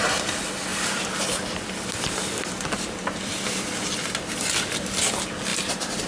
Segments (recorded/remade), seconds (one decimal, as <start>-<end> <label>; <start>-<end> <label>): 0.0-0.7 recorded; 0.7-4.4 remade; 4.4-5.5 recorded; 5.5-6.1 remade